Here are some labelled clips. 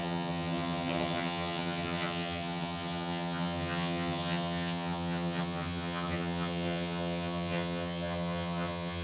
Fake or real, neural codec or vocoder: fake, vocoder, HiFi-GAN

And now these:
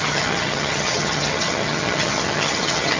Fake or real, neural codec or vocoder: fake, vocoder, HiFi-GAN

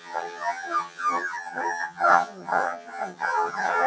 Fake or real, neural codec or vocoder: fake, vocoder, HiFi-GAN